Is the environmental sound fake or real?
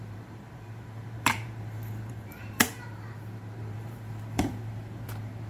fake